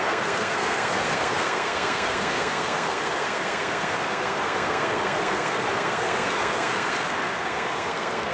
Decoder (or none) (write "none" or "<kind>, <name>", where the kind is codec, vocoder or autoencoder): codec, SNAC